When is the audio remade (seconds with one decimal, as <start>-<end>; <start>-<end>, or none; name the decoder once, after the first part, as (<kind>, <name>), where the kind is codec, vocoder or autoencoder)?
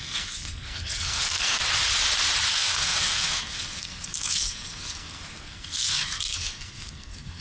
0.0-1.6 (codec, SNAC); 2.5-7.4